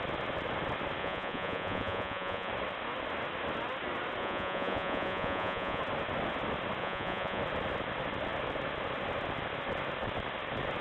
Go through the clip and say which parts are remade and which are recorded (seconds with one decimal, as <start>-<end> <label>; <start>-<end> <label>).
0.0-1.0 recorded; 1.0-2.5 remade; 2.5-4.2 recorded; 4.2-5.8 remade; 5.8-6.8 recorded; 6.8-7.4 remade; 7.4-10.8 recorded